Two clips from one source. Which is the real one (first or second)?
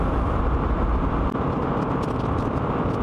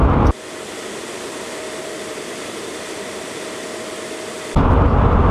first